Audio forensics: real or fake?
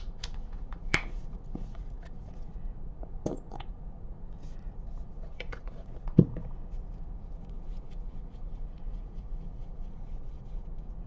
fake